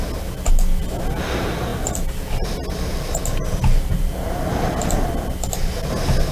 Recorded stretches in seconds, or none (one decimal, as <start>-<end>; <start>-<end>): 0.0-6.3